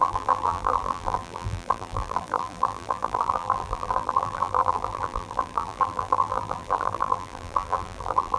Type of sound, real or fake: fake